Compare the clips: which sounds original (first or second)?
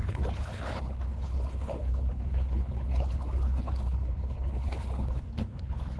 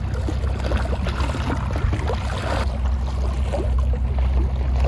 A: second